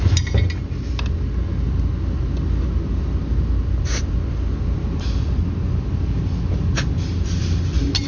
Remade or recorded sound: recorded